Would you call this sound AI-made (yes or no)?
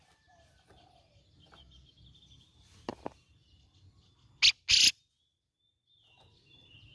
no